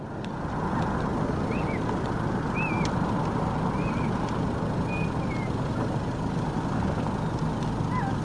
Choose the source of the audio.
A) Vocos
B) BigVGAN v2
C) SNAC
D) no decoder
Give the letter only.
D